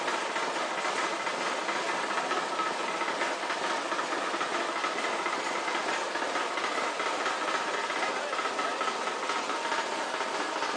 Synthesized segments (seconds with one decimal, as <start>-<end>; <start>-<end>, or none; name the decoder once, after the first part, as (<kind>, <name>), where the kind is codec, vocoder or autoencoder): 4.8-5.9 (vocoder, BigVGAN v2)

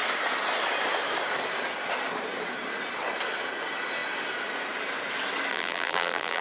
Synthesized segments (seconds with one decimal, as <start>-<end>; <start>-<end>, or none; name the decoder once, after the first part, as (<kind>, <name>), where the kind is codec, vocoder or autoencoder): 5.5-6.4 (vocoder, BigVGAN v2)